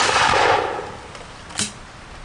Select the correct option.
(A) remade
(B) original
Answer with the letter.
B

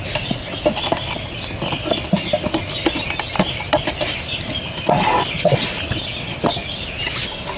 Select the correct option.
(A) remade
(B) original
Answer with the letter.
B